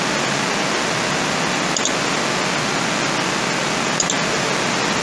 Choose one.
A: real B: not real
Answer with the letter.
A